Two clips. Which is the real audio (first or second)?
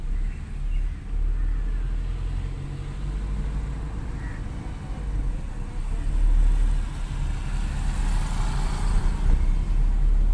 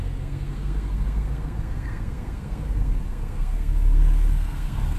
first